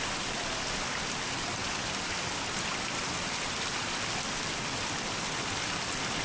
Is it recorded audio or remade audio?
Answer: recorded